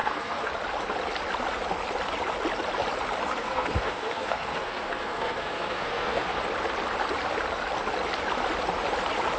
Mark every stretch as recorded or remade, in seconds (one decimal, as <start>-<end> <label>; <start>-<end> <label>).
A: 0.0-0.5 remade; 0.5-3.3 recorded; 3.3-6.4 remade; 6.4-9.4 recorded